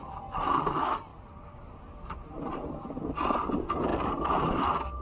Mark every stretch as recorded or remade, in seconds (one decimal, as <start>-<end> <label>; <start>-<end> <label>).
0.0-1.1 recorded; 1.1-2.9 remade; 2.9-3.9 recorded; 3.9-4.5 remade; 4.5-5.0 recorded